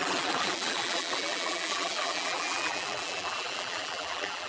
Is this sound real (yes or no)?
no